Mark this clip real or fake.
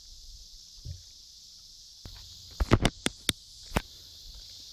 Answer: real